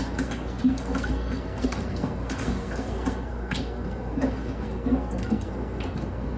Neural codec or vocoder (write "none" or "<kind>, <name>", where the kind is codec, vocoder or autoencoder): codec, SNAC